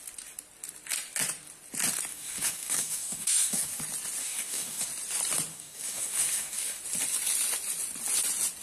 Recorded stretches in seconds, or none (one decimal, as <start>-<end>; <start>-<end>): 0.0-2.1; 3.8-4.2; 4.9-5.5; 6.8-8.6